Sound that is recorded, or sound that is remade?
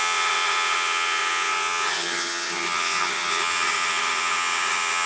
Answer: remade